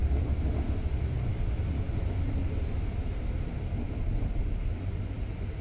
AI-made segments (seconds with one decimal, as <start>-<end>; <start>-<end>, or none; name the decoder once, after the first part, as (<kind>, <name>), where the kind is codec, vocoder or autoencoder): none